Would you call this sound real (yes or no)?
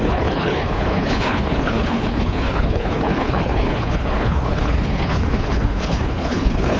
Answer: no